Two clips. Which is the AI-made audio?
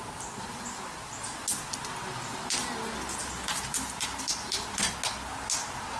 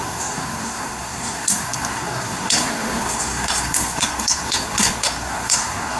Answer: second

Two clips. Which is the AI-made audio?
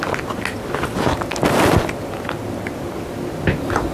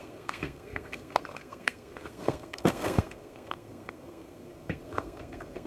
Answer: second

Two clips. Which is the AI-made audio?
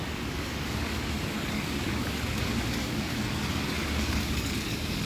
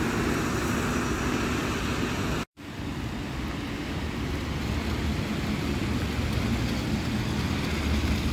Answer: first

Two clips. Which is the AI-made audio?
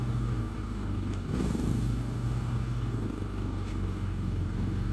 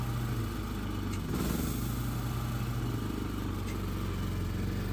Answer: first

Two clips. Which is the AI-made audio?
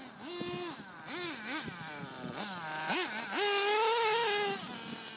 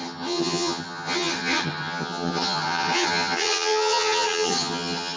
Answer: second